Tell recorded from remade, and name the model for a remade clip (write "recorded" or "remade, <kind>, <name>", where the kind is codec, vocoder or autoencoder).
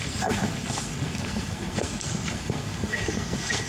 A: remade, codec, SNAC